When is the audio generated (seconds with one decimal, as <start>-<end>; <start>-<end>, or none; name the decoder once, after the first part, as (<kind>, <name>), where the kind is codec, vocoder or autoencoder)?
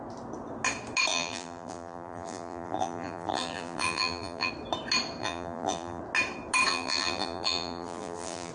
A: 1.1-4.5 (vocoder, BigVGAN v2); 5.2-6.0; 6.7-8.5